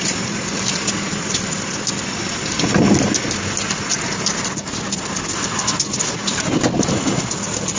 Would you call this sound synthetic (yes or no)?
no